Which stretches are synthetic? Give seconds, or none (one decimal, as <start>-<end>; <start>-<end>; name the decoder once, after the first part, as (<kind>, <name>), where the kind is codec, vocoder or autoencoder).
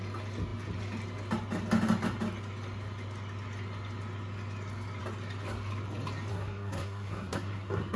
6.3-8.0 (codec, SNAC)